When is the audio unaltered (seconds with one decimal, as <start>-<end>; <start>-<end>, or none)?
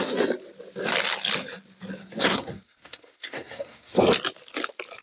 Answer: 0.0-2.0; 4.0-5.0